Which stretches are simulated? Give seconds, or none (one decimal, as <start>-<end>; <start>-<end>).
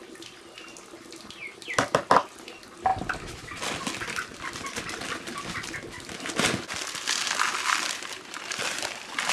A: none